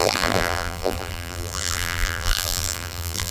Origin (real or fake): fake